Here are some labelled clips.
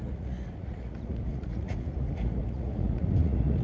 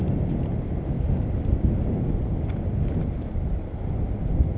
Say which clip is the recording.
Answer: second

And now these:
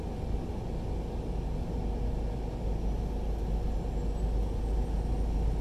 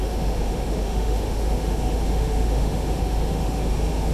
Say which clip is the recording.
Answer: first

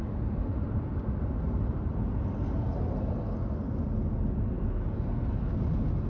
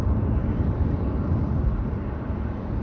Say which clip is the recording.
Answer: first